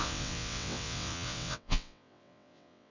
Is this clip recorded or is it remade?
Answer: remade